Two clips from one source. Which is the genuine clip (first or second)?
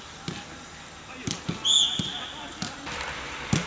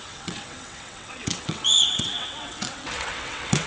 first